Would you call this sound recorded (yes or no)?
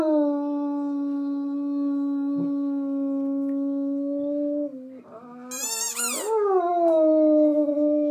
yes